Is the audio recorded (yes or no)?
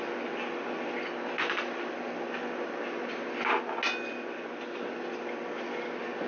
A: yes